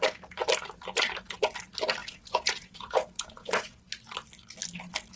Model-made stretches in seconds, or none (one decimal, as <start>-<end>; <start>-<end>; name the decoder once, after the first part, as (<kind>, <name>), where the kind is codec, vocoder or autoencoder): 2.0-3.8 (vocoder, Vocos)